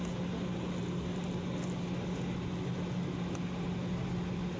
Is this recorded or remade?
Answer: recorded